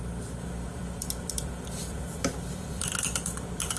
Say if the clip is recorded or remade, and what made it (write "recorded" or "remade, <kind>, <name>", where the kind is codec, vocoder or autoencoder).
remade, vocoder, BigVGAN v2